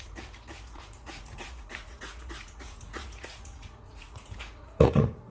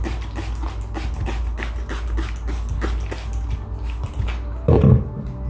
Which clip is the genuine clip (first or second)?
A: second